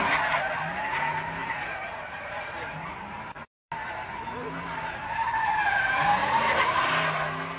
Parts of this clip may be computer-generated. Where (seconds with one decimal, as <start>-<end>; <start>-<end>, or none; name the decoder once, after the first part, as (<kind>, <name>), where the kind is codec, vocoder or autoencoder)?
1.4-3.7 (vocoder, BigVGAN v2); 6.2-6.8

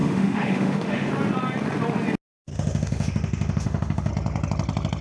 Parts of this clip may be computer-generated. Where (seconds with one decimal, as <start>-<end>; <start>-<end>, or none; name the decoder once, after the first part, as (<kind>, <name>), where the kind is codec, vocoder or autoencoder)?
0.0-1.1 (autoencoder, DAC-VAE); 2.5-4.1

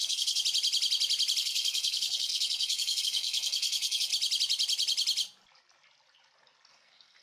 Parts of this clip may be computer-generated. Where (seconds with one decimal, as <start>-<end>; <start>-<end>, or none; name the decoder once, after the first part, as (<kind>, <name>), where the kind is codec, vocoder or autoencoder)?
0.0-0.4 (codec, SNAC); 1.4-4.1; 6.7-7.2

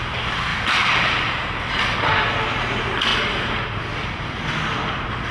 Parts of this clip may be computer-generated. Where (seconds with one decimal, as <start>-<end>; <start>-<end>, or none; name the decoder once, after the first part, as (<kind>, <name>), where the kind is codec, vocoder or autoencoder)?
0.5-2.1 (vocoder, BigVGAN v2)

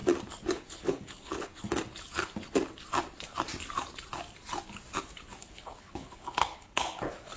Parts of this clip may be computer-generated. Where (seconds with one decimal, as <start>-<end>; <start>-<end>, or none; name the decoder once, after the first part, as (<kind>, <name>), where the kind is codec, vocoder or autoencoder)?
0.5-1.5 (codec, HILCodec); 5.4-7.4

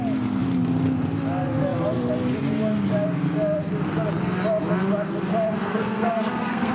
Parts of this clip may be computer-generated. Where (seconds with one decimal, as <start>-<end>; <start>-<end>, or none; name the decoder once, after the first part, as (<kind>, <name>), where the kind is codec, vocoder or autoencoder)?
5.7-6.7 (codec, SNAC)

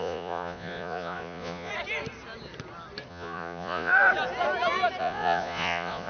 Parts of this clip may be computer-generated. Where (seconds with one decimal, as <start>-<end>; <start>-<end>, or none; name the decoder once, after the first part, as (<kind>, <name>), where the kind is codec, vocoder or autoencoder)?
0.0-1.7 (vocoder, Vocos); 3.1-3.9; 5.0-6.1